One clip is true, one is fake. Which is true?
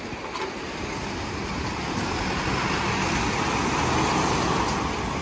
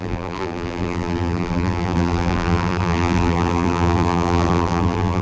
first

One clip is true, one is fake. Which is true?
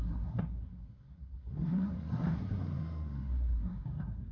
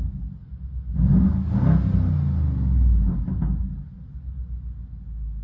second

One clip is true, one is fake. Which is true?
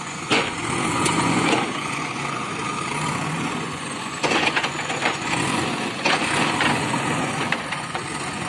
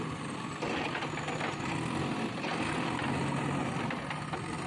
second